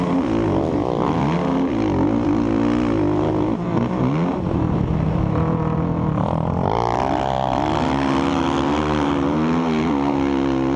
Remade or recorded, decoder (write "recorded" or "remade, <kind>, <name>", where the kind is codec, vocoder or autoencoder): recorded